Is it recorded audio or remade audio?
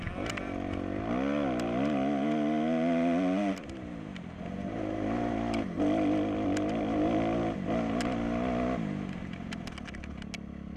recorded